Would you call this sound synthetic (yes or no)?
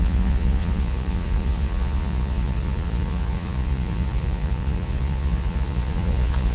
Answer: yes